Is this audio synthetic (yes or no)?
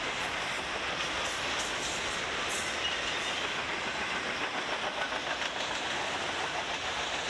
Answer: no